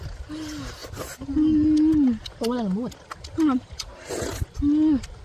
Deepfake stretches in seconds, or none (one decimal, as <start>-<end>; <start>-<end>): none